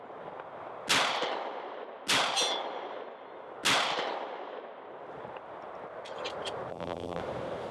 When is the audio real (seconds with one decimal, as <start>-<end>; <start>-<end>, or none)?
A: 0.0-6.7; 7.2-7.7